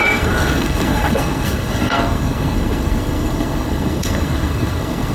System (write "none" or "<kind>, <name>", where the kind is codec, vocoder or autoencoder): codec, SNAC